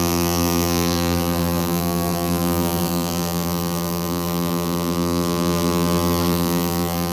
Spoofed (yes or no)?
yes